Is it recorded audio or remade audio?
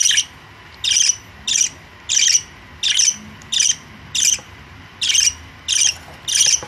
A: recorded